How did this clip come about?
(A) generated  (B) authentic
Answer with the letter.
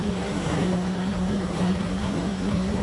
A